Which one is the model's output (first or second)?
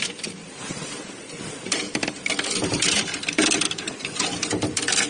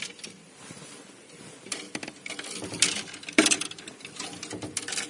first